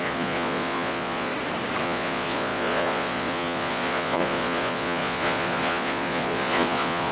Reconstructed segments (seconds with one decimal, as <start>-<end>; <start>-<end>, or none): 0.0-1.3; 1.8-7.1